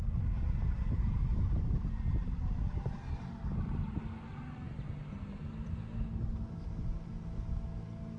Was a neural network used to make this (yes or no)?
no